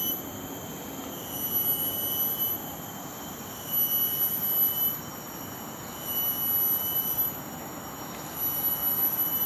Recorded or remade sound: recorded